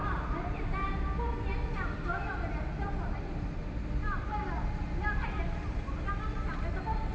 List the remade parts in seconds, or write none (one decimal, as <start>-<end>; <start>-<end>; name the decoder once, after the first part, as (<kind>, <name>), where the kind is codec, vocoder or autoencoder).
none